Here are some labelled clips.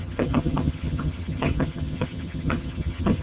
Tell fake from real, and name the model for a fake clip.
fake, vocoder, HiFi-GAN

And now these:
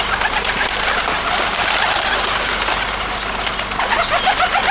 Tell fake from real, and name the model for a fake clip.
real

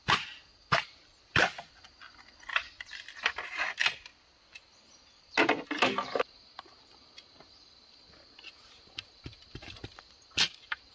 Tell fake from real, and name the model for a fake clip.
real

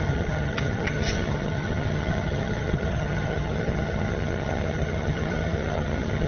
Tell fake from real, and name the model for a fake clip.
fake, vocoder, HiFi-GAN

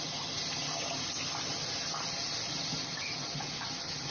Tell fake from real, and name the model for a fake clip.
real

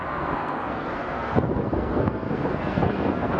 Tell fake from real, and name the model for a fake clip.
fake, codec, SNAC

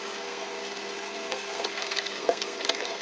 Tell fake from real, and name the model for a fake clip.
fake, codec, SNAC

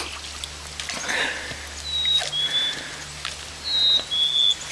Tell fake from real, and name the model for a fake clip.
real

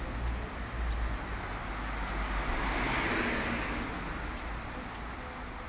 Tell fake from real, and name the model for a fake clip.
real